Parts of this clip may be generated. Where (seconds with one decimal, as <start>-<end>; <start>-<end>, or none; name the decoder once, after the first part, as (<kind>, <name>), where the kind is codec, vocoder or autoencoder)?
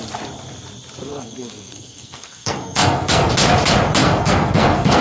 1.1-3.3 (codec, SNAC); 4.0-5.0